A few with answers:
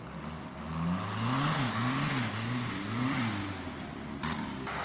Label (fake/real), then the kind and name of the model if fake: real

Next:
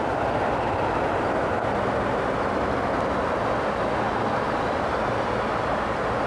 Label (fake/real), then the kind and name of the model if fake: real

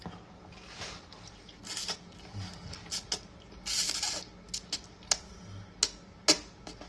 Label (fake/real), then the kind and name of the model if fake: real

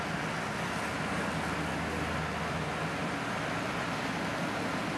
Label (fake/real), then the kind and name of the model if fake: real